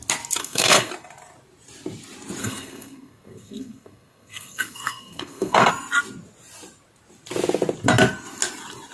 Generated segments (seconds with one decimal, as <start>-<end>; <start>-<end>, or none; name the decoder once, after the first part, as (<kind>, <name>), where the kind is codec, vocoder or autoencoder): 0.4-0.9 (codec, SNAC); 2.4-5.7